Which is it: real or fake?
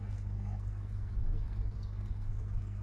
fake